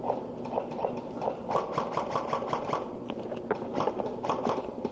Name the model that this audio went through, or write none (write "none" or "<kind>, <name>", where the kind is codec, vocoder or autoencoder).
none